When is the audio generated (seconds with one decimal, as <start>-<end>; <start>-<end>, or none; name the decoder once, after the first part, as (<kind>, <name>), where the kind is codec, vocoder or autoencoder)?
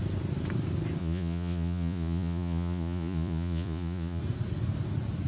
1.0-4.2 (vocoder, Vocos)